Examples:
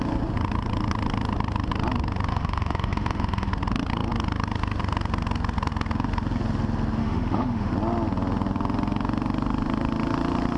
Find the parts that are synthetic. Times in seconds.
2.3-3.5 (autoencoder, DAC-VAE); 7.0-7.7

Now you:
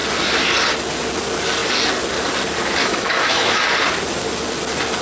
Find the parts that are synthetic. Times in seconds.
2.8-3.6 (autoencoder, DAC-VAE)

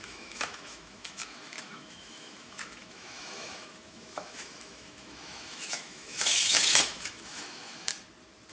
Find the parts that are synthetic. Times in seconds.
0.0-7.9 (autoencoder, DAC-VAE)

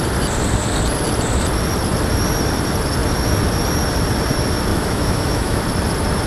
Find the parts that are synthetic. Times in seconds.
4.7-5.6 (autoencoder, DAC-VAE)

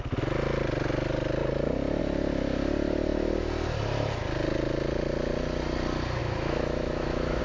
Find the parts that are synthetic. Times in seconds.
6.2-7.4 (autoencoder, DAC-VAE)